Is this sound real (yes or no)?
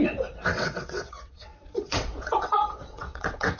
no